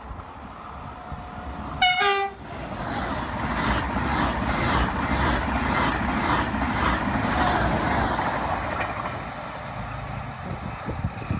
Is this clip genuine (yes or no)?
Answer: yes